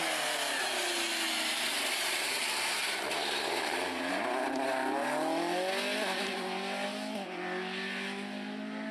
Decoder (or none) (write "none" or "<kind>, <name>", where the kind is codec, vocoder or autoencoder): none